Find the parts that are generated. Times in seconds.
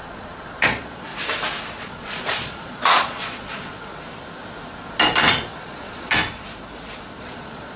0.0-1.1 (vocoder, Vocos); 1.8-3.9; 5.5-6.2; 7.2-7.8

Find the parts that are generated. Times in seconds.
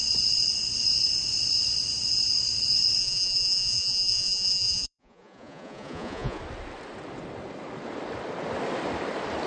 3.0-6.4 (vocoder, Vocos)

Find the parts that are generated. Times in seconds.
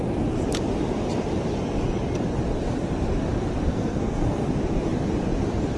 3.7-4.5 (codec, SNAC)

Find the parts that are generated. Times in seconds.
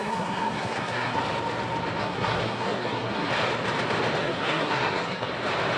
0.0-1.2 (codec, SNAC); 2.0-3.3; 4.2-5.3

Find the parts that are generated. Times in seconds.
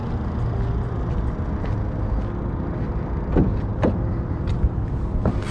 3.7-4.8 (vocoder, BigVGAN v2)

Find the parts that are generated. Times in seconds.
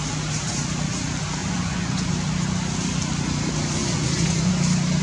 1.4-2.1 (vocoder, Vocos); 3.8-4.5